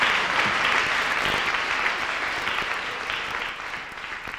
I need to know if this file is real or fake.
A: real